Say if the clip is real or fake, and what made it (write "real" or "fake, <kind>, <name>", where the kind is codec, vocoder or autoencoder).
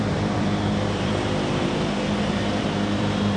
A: fake, vocoder, BigVGAN v2